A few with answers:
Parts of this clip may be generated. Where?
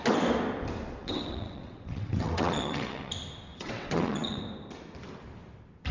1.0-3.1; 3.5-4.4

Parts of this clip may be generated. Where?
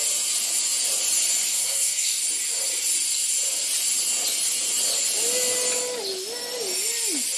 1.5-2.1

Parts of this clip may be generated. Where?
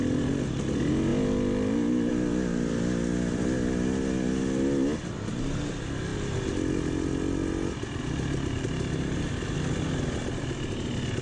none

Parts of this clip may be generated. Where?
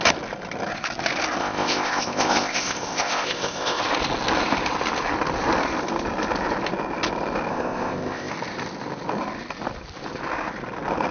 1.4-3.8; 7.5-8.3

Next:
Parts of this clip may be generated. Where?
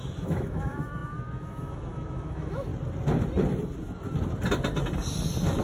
0.0-2.7